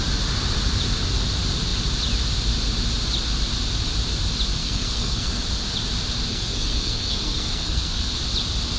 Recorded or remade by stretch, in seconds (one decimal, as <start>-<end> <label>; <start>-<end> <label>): 0.0-4.6 recorded; 4.6-5.5 remade; 5.5-6.3 recorded; 6.3-8.1 remade; 8.1-8.8 recorded